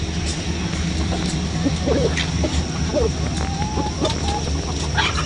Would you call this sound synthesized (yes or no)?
no